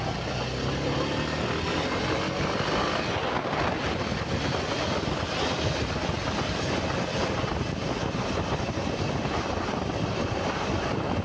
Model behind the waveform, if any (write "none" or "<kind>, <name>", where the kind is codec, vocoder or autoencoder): none